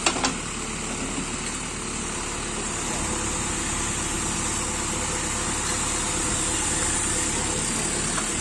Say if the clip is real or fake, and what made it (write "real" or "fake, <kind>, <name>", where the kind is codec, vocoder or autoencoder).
real